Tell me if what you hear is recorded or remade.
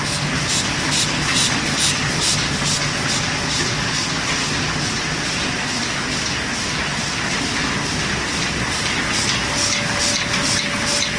recorded